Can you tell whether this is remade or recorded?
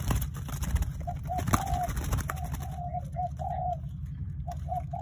recorded